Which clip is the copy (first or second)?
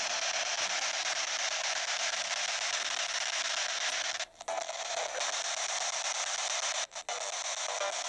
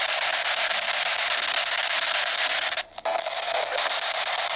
second